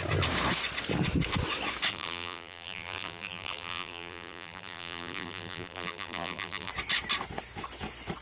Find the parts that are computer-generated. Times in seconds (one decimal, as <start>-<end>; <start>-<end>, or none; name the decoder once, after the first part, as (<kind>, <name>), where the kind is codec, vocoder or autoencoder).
1.9-6.7 (vocoder, BigVGAN v2)